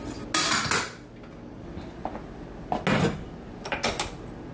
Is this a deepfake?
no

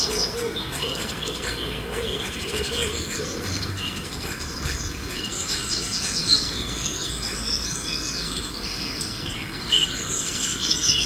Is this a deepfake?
yes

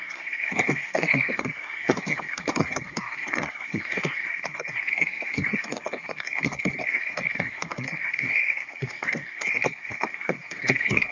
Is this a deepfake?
yes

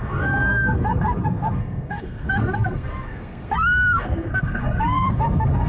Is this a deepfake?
yes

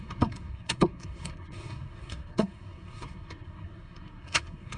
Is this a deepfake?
yes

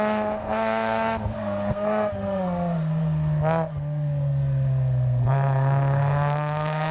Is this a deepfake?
yes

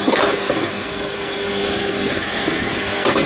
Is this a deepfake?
yes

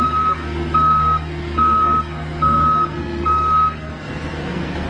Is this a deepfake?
yes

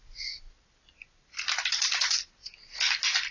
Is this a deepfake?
no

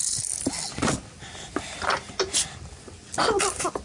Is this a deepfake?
no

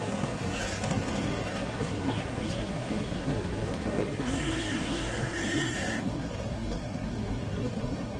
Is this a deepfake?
yes